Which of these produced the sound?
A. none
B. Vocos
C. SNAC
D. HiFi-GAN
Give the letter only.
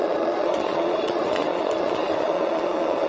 B